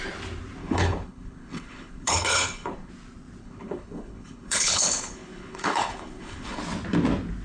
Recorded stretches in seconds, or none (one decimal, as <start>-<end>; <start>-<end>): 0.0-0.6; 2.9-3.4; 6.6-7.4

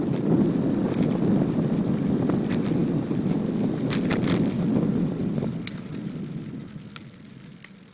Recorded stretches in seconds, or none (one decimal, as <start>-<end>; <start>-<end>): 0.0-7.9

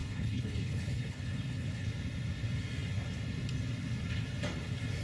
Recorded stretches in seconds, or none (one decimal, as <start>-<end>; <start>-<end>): 1.9-5.0